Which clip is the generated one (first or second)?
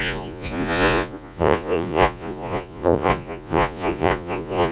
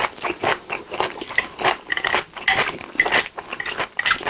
first